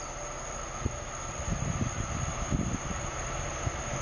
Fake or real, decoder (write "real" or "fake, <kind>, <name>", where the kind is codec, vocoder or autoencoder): real